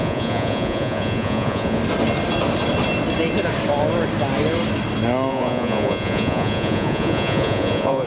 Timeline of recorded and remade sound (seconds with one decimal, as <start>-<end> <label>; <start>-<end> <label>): 0.0-1.8 remade; 1.8-5.3 recorded; 5.3-8.1 remade